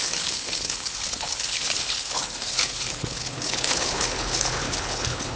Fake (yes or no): yes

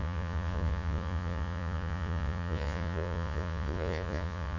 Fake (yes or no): yes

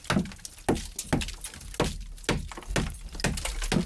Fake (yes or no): no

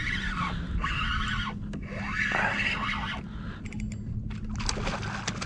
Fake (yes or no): no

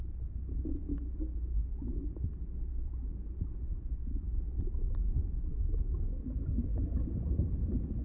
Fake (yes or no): yes